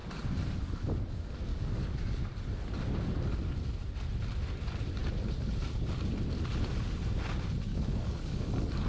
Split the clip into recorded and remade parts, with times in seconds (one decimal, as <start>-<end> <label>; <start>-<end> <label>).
0.0-1.5 recorded; 1.5-2.3 remade; 2.3-7.7 recorded; 7.7-8.5 remade; 8.5-8.9 recorded